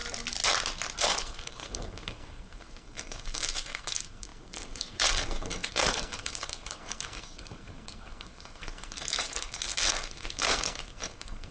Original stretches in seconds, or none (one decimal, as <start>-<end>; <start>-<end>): 0.0-1.0